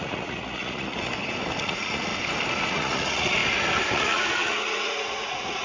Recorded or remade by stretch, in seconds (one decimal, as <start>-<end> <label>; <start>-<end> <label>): 0.0-1.1 remade; 1.1-1.6 recorded; 1.6-2.1 remade; 2.1-2.7 recorded; 2.7-3.4 remade; 3.4-3.9 recorded; 3.9-5.6 remade